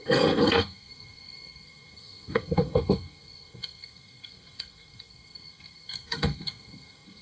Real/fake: fake